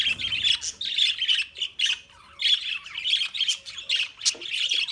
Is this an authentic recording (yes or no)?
yes